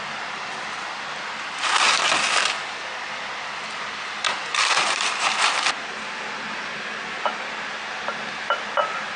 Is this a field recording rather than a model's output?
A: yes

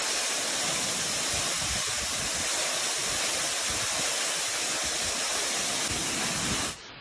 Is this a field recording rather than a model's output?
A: yes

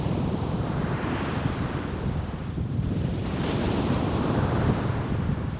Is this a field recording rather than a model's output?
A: yes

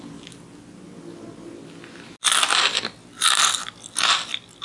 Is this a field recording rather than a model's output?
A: yes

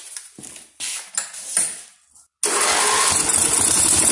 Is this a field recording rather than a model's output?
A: yes